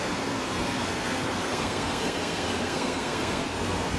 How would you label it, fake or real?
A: fake